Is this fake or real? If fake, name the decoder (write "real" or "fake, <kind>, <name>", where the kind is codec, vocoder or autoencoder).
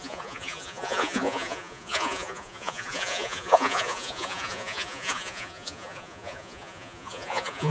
fake, vocoder, Vocos